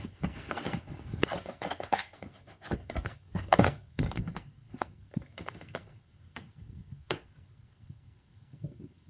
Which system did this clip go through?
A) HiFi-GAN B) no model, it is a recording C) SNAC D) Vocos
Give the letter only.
C